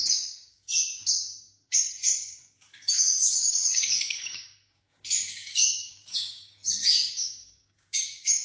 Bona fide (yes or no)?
no